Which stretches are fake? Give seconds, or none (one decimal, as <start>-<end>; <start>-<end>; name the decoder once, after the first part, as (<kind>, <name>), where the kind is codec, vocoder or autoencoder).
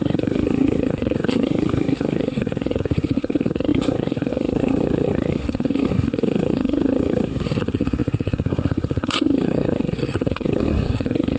0.0-11.4 (codec, SNAC)